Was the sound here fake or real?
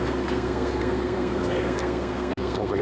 fake